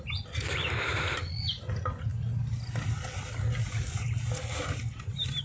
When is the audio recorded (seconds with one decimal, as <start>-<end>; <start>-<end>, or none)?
0.0-5.4